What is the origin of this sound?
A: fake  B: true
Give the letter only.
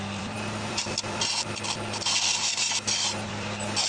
A